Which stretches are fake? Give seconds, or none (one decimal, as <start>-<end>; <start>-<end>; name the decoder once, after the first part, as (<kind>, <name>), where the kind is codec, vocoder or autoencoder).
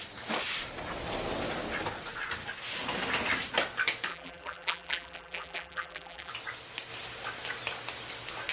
4.1-6.3 (vocoder, BigVGAN v2)